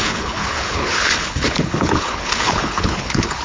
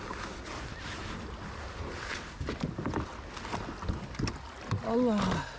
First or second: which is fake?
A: first